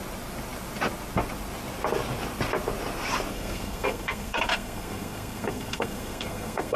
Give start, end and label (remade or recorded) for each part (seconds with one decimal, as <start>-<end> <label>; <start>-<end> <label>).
0.0-3.3 recorded; 3.3-6.8 remade